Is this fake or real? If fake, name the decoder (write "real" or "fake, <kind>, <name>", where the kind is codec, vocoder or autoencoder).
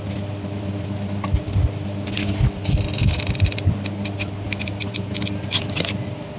real